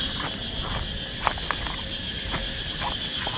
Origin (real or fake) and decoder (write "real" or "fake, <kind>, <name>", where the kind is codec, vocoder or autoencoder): real